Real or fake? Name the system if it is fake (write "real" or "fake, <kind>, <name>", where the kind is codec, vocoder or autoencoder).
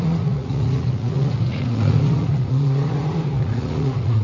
fake, vocoder, Vocos